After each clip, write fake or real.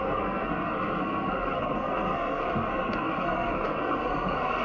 fake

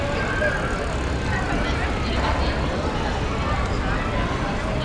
real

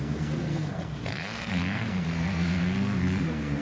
fake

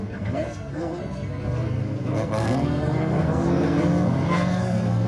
fake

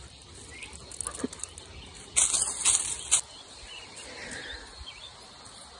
real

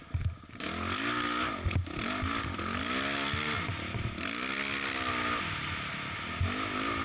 real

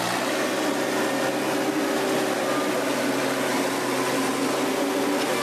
real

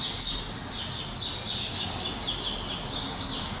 real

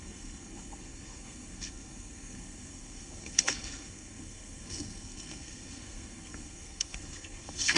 fake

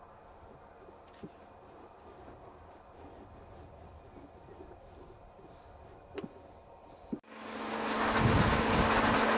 real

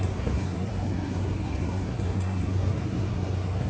fake